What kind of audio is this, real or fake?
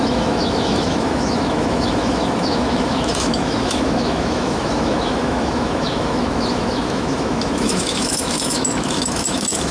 fake